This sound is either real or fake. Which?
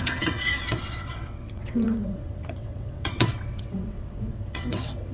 fake